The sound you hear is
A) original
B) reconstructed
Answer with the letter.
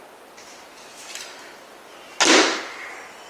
A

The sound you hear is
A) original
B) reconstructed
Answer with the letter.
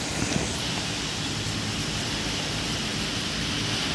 A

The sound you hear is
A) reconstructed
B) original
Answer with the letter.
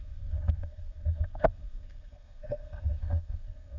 A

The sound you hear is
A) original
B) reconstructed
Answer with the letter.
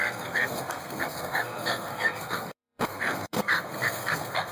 B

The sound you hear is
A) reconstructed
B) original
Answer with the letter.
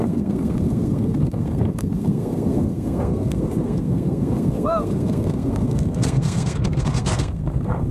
A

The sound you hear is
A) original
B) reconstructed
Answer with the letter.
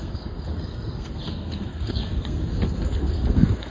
B